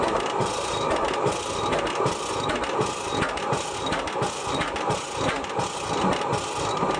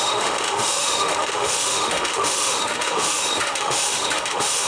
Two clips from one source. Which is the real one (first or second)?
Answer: first